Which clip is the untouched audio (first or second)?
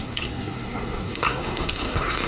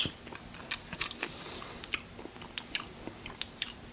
second